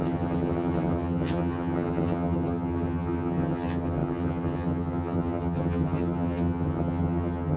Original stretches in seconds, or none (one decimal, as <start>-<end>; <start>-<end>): none